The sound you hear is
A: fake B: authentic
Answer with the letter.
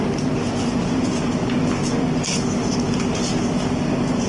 B